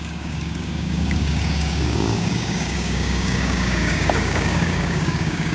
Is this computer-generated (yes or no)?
yes